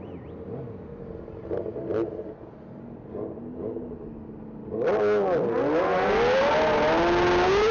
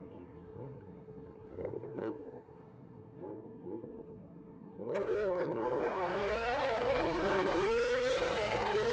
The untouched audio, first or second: first